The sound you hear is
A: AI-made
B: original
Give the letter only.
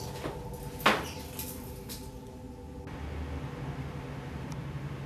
B